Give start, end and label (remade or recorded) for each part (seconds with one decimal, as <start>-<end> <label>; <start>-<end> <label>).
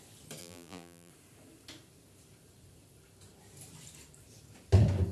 0.0-0.4 recorded; 0.4-1.1 remade; 1.1-5.1 recorded